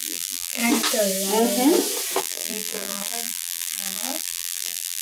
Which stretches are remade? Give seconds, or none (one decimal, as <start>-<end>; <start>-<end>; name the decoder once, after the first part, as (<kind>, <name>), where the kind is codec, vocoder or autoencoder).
0.0-0.6 (vocoder, BigVGAN v2); 2.2-5.0